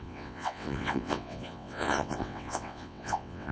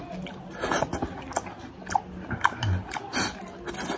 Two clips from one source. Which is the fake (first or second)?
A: first